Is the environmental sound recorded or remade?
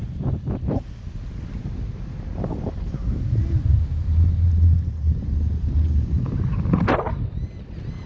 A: recorded